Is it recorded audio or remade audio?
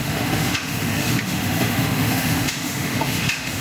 remade